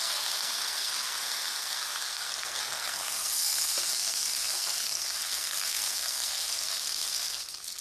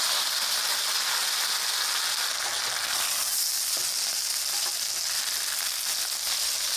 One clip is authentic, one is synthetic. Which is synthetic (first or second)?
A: first